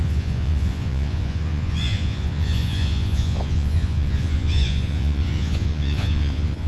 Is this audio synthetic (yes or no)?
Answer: yes